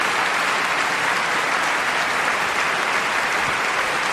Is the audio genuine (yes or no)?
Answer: yes